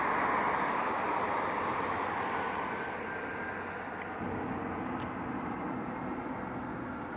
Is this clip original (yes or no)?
yes